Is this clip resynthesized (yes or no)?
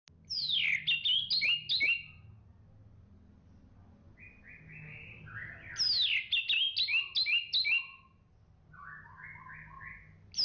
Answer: no